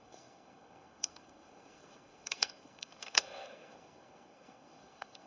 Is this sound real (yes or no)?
no